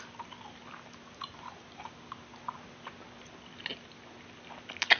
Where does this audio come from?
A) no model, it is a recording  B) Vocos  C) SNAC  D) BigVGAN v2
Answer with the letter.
A